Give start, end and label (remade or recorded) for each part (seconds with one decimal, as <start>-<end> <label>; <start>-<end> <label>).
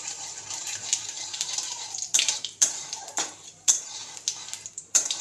0.0-4.0 remade; 4.0-4.7 recorded; 4.7-5.2 remade